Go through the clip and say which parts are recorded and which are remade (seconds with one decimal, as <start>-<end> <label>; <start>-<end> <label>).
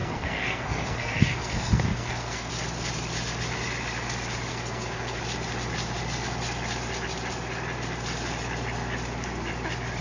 0.0-2.5 remade; 2.5-4.5 recorded; 4.5-5.2 remade; 5.2-10.0 recorded